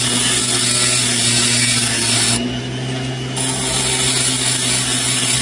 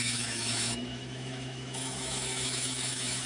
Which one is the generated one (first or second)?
second